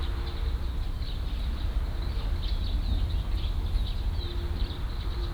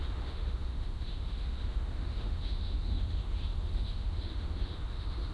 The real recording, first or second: first